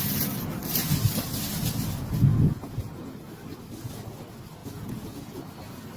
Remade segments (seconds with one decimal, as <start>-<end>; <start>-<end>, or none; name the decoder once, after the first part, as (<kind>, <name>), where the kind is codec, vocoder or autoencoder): 2.3-3.2 (vocoder, Vocos); 4.6-5.4